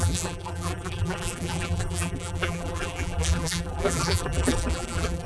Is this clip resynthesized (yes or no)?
yes